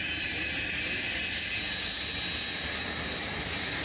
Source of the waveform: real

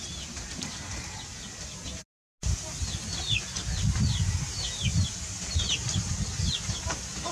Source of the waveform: real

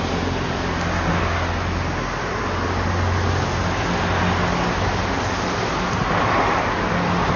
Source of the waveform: real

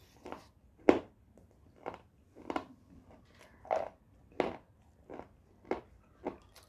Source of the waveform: real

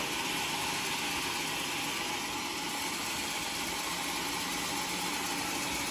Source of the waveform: real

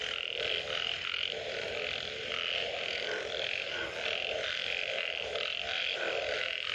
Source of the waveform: real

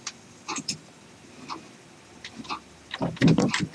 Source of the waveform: fake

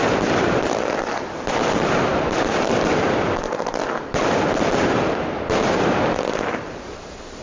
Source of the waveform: fake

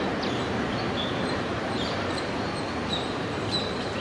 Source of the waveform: fake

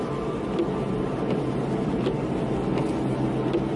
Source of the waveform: real